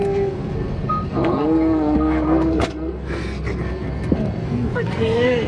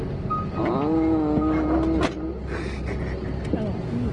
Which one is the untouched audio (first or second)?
second